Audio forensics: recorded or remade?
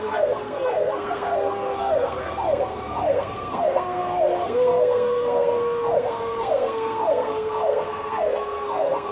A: remade